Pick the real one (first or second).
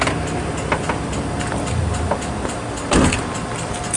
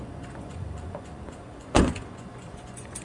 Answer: first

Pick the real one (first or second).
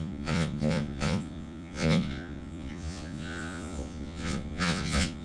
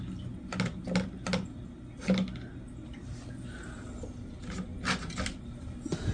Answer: second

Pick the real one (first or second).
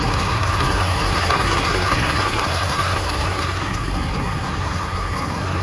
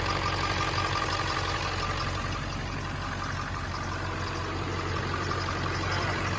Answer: second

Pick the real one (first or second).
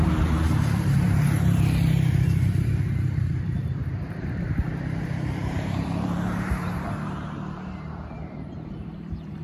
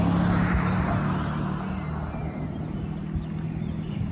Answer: second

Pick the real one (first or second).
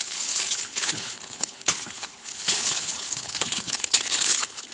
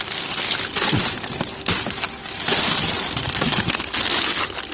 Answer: second